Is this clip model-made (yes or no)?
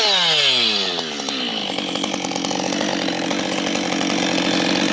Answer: no